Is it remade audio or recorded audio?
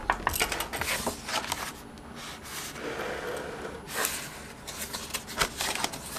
recorded